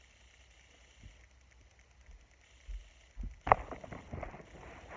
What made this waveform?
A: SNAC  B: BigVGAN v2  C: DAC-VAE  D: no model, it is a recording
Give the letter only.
D